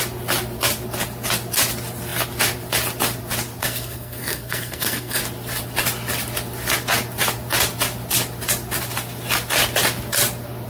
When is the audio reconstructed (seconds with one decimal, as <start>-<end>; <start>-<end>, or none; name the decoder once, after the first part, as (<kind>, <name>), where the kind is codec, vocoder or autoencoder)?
3.6-5.2 (codec, SNAC)